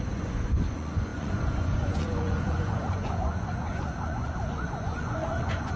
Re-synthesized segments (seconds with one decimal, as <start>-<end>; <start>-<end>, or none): 0.0-5.8